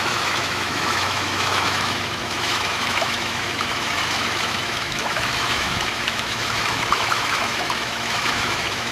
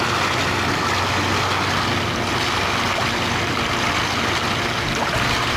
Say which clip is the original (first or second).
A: second